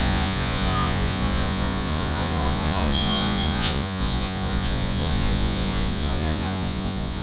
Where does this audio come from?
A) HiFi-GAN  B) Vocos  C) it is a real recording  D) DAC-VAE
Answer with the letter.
B